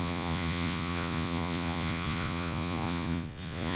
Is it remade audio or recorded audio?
remade